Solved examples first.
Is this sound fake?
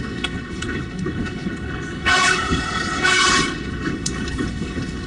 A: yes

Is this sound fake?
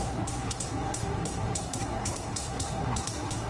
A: yes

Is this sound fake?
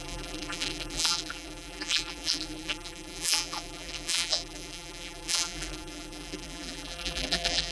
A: yes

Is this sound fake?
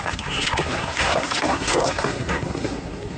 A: yes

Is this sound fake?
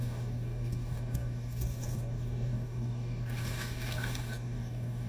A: yes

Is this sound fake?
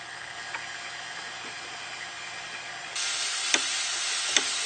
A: no